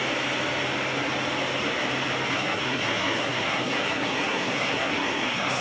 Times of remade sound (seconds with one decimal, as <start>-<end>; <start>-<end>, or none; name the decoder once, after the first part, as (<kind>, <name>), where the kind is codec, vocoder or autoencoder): 2.3-5.6 (codec, SNAC)